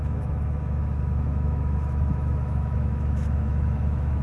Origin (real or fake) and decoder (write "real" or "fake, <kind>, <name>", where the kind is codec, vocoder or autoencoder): fake, autoencoder, DAC-VAE